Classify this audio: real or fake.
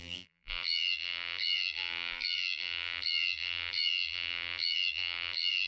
fake